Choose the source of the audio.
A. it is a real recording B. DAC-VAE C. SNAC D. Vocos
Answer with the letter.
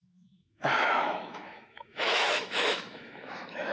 B